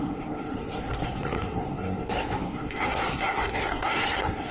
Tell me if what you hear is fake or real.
fake